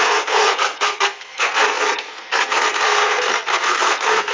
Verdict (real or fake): fake